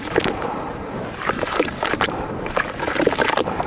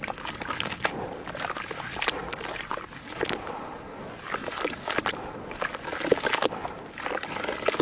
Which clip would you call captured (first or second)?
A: second